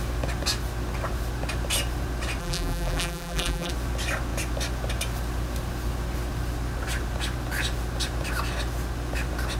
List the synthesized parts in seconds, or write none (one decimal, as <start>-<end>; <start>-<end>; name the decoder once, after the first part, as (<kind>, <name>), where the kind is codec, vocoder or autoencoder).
2.4-3.7 (vocoder, BigVGAN v2)